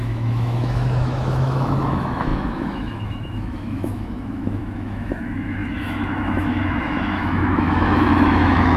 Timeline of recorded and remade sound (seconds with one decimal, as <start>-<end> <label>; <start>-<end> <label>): 0.0-8.8 remade